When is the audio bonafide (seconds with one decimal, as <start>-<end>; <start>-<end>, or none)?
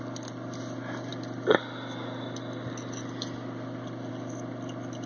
0.0-5.1